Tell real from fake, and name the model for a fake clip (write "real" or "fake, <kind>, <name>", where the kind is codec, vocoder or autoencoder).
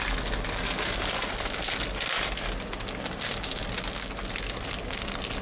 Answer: real